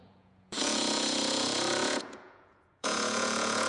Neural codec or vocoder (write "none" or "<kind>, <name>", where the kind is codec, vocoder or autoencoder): vocoder, Vocos